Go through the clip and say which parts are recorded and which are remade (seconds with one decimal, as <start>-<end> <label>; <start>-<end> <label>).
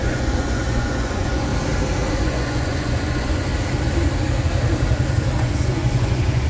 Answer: 0.0-1.5 remade; 1.5-2.1 recorded; 2.1-3.5 remade; 3.5-5.4 recorded; 5.4-6.5 remade